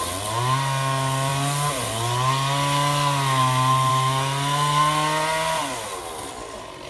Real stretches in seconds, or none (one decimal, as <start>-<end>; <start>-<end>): 0.0-6.9